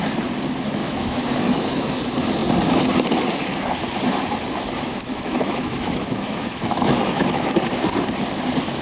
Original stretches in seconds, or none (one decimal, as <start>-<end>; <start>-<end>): 0.0-0.8; 2.0-4.9; 7.5-8.8